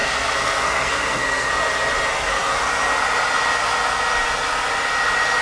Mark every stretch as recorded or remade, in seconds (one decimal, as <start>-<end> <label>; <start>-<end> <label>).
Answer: 0.0-1.5 remade; 1.5-5.4 recorded